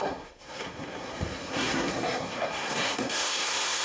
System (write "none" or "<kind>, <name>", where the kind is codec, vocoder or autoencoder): codec, SNAC